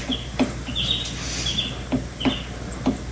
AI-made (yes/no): no